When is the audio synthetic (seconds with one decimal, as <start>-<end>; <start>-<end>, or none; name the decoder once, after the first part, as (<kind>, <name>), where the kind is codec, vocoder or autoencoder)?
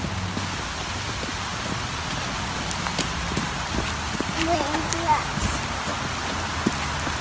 none